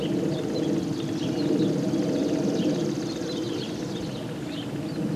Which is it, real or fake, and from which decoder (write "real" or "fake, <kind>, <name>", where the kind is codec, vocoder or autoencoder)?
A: real